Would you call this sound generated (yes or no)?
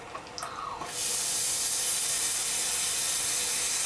no